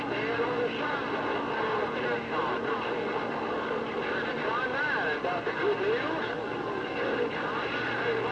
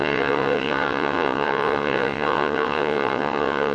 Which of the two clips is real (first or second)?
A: first